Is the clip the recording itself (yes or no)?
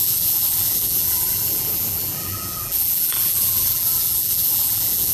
no